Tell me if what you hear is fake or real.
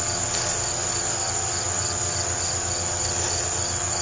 real